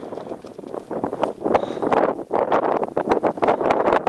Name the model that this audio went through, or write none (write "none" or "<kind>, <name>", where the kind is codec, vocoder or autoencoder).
none